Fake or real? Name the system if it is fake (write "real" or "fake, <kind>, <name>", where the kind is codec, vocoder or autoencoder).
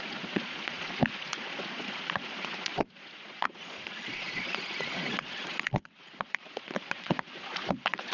fake, vocoder, Vocos